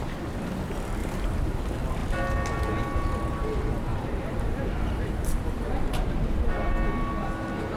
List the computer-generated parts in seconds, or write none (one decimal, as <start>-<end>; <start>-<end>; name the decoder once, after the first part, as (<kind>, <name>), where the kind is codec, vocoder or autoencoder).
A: 1.0-1.6 (vocoder, BigVGAN v2); 3.9-6.7